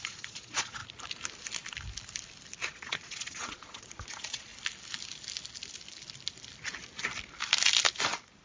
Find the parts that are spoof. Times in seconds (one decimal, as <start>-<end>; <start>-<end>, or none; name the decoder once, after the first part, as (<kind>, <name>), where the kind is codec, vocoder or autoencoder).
0.0-0.8 (vocoder, Vocos); 2.7-4.5